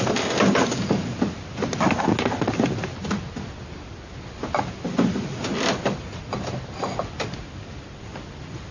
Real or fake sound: real